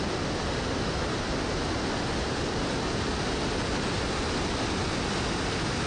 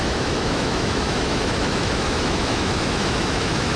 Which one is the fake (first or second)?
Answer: second